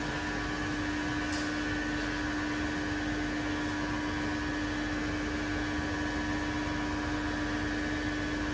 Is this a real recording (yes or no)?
yes